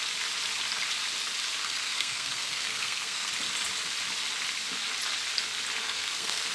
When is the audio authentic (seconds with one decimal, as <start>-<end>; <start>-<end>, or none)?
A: 0.0-1.6; 3.3-5.8